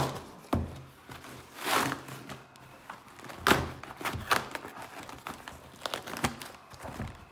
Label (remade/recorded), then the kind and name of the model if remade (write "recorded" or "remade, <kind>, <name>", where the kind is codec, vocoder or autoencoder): recorded